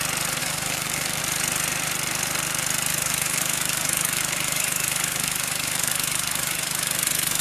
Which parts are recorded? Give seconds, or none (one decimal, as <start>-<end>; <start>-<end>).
0.0-0.4; 1.2-2.9